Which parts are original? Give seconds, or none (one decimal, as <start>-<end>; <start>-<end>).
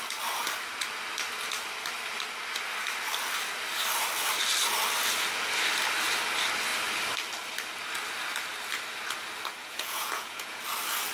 0.0-9.6; 10.6-11.1